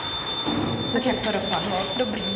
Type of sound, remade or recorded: recorded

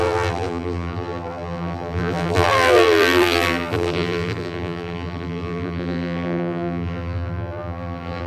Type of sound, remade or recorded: remade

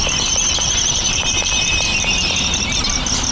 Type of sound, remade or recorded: remade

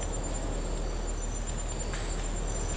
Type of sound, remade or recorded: recorded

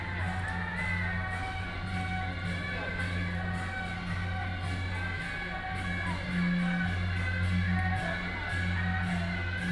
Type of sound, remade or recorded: recorded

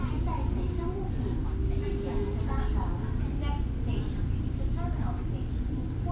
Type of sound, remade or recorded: recorded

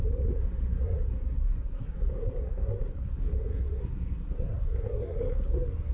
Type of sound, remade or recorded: remade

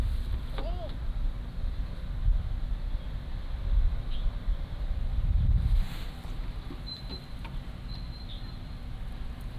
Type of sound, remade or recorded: recorded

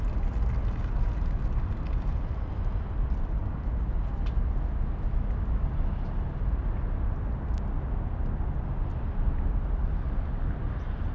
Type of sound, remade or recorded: recorded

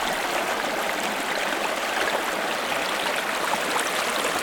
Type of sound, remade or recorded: recorded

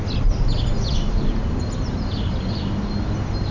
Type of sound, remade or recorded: recorded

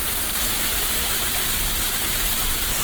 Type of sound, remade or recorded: recorded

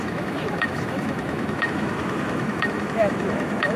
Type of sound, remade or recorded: remade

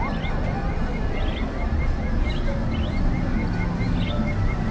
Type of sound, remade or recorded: recorded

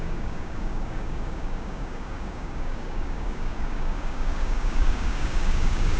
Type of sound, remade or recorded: remade